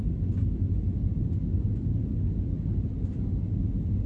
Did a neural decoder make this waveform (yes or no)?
no